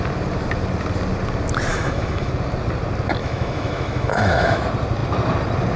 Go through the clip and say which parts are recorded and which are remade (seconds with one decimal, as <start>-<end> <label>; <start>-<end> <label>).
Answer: 0.0-1.7 recorded; 1.7-2.3 remade; 2.3-3.2 recorded; 3.2-4.6 remade; 4.6-5.8 recorded